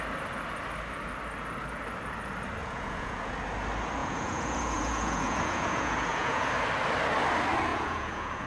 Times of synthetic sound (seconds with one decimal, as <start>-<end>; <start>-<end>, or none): 2.6-3.3; 4.0-6.5; 7.7-8.5